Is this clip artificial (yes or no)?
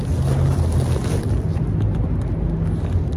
no